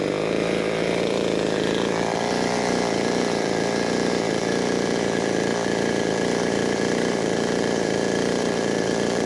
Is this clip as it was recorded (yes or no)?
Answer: no